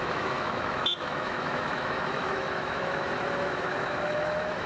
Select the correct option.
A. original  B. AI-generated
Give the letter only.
B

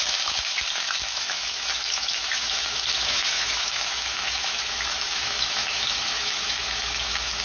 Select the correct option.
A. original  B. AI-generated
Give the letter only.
B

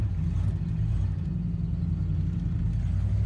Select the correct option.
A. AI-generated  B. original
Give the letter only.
B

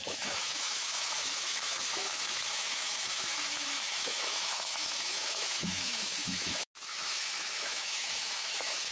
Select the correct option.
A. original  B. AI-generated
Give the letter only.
B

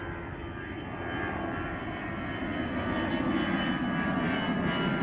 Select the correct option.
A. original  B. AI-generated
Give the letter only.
A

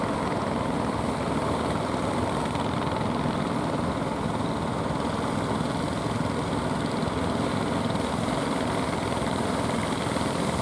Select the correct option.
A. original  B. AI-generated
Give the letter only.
A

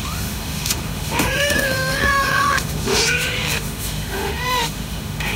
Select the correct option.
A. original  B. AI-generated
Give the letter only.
B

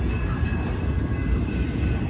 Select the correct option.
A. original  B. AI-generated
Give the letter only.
A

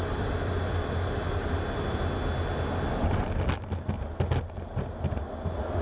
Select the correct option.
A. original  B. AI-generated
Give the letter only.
A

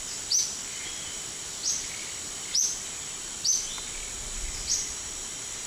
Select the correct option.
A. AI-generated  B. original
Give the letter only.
B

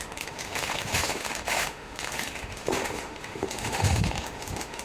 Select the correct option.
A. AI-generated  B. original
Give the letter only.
A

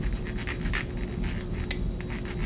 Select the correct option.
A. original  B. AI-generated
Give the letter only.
A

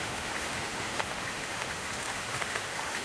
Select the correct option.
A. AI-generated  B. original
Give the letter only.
A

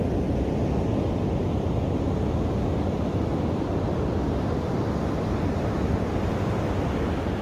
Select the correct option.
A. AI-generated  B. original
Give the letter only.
B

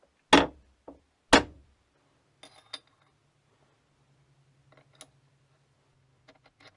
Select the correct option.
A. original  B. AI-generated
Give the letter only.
A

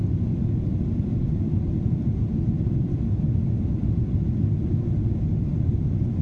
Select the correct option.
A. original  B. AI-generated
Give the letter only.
A